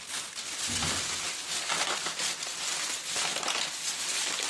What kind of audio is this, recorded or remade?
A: recorded